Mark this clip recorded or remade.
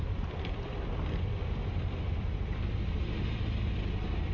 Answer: recorded